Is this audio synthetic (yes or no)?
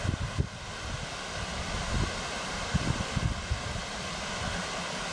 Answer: no